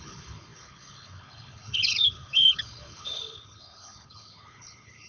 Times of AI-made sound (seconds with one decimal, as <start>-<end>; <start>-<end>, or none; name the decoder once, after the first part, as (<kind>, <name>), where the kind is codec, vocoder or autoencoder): 0.0-5.1 (codec, HILCodec)